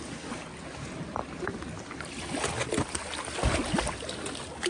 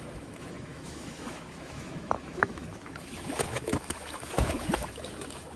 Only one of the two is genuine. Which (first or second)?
first